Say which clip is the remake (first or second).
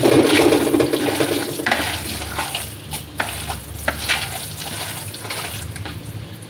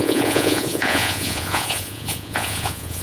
second